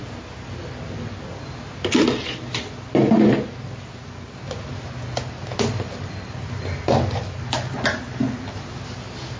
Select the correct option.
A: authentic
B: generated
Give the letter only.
A